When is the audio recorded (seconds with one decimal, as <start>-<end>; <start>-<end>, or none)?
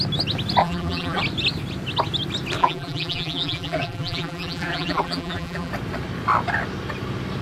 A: 0.0-0.6; 1.2-2.6; 5.7-7.4